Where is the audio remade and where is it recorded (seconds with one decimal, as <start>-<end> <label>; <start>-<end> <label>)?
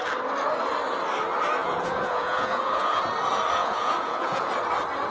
0.0-1.6 recorded; 1.6-3.0 remade; 3.0-3.6 recorded; 3.6-4.5 remade; 4.5-5.1 recorded